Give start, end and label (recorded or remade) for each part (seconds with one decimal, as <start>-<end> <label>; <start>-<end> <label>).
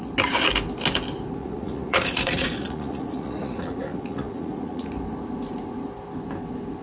0.0-1.4 recorded; 1.4-4.9 remade; 4.9-6.8 recorded